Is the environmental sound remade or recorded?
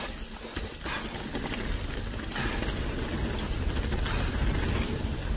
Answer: recorded